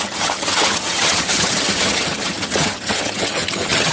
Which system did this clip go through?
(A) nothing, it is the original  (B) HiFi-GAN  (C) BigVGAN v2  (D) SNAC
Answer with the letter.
B